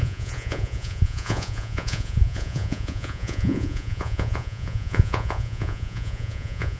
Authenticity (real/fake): fake